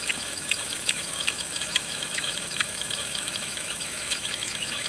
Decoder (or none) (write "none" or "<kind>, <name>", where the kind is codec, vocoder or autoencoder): autoencoder, DAC-VAE